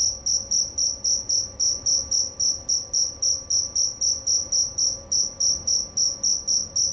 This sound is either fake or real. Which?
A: real